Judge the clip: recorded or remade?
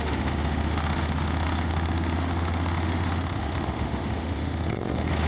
remade